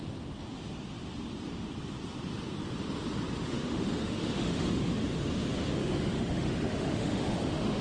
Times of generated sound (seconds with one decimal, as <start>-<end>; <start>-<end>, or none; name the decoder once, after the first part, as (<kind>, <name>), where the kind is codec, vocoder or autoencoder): 3.4-4.9 (autoencoder, DAC-VAE); 5.8-7.8

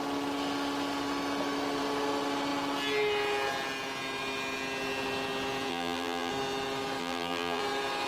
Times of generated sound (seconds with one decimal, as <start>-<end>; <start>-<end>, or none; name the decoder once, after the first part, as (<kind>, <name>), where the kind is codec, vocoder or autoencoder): 5.7-6.3 (vocoder, BigVGAN v2); 7.0-7.6

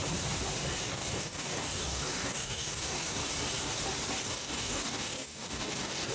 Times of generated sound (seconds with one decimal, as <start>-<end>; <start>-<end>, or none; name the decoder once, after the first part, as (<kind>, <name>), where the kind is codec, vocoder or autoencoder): 0.8-3.2 (codec, DAC); 4.2-6.1

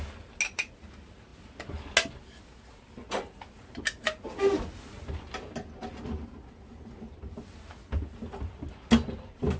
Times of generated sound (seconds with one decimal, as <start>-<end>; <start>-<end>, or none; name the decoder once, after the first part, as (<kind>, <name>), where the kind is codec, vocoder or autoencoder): none